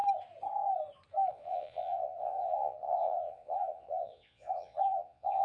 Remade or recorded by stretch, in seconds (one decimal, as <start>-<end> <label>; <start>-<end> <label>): 0.0-1.3 recorded; 1.3-5.4 remade